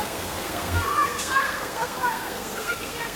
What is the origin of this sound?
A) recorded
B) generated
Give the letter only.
B